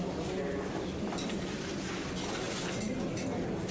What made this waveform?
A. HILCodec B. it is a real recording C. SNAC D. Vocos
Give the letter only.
B